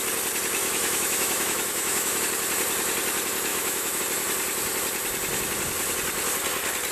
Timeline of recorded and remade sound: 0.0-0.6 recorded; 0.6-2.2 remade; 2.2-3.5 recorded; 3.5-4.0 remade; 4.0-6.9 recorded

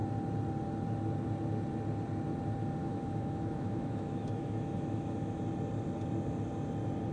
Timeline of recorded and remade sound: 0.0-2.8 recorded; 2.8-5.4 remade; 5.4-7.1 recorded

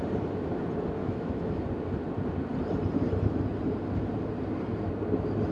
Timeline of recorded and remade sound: 0.0-1.0 recorded; 1.0-1.6 remade; 1.6-5.5 recorded

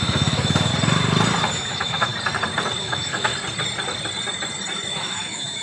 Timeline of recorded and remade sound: 0.0-0.7 remade; 0.7-1.5 recorded; 1.5-2.1 remade; 2.1-2.8 recorded; 2.8-3.3 remade; 3.3-4.9 recorded; 4.9-5.6 remade

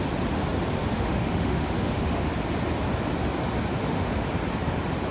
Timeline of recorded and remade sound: 0.0-0.8 recorded; 0.8-2.3 remade; 2.3-3.8 recorded; 3.8-4.3 remade; 4.3-5.1 recorded

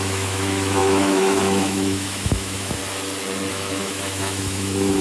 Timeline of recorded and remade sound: 0.0-2.8 remade; 2.8-3.5 recorded; 3.5-5.0 remade